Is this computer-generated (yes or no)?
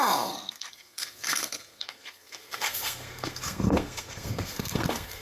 yes